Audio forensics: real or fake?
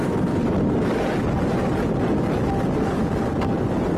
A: real